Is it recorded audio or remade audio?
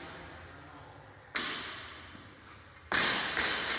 recorded